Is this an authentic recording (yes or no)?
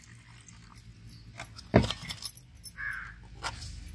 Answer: yes